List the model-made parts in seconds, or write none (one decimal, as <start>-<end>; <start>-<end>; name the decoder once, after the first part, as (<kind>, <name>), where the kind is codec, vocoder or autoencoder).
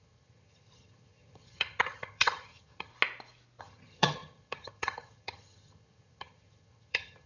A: 0.0-2.9 (vocoder, HiFi-GAN); 3.6-7.3